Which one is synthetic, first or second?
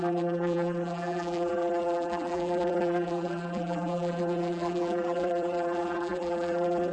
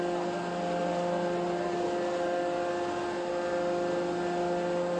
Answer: first